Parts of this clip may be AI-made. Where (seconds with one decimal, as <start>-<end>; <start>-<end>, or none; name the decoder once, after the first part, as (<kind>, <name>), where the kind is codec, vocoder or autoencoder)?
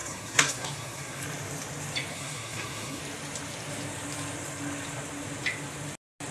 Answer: 0.0-1.2 (codec, SNAC); 2.1-3.0